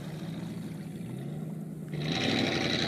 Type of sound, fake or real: real